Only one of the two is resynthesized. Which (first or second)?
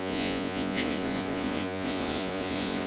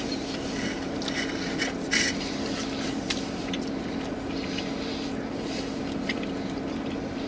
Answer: first